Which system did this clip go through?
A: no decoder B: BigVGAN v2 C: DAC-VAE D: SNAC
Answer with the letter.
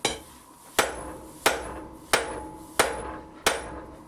A